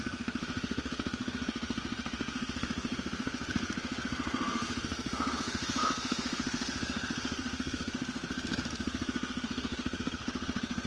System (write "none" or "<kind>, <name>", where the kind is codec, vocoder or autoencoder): codec, SNAC